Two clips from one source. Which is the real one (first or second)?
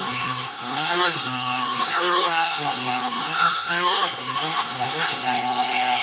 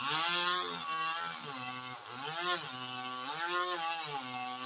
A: second